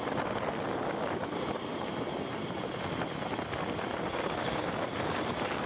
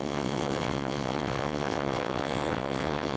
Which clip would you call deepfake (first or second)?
second